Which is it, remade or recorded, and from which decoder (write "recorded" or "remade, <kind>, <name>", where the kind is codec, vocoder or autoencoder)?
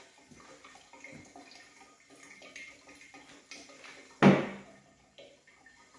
recorded